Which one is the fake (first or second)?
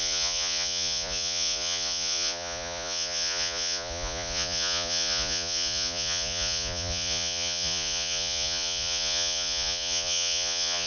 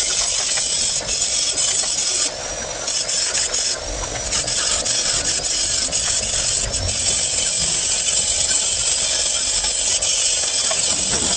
first